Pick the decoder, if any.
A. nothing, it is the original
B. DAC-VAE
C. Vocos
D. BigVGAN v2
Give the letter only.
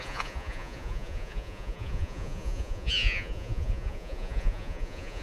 C